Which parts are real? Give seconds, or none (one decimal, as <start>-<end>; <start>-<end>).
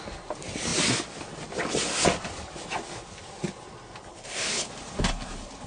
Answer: 0.0-4.1; 4.7-5.7